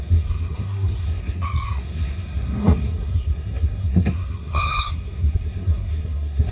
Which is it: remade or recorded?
remade